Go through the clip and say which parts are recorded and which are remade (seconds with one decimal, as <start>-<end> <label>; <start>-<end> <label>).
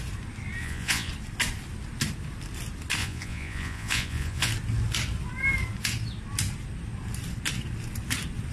0.0-0.6 recorded; 0.6-1.1 remade; 1.1-3.0 recorded; 3.0-4.5 remade; 4.5-8.5 recorded